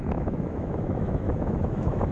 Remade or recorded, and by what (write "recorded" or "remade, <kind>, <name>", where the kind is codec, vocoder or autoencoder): remade, autoencoder, DAC-VAE